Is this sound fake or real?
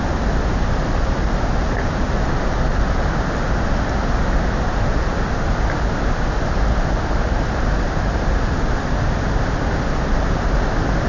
real